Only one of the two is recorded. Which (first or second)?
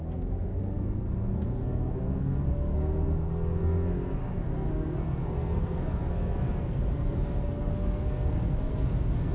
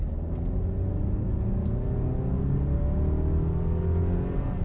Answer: second